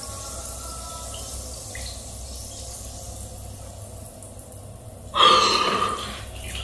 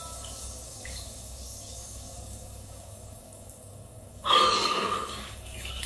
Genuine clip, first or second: first